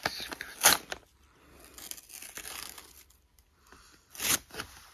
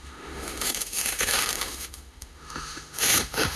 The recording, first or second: first